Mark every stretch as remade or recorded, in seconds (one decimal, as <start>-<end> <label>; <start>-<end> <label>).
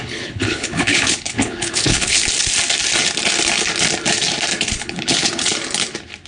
0.0-2.2 remade; 2.2-4.6 recorded; 4.6-5.5 remade; 5.5-6.3 recorded